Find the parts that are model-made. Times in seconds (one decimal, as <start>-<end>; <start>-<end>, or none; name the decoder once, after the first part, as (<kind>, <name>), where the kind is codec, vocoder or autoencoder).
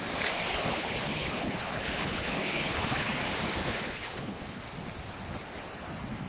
0.5-3.2 (codec, HILCodec); 3.6-4.6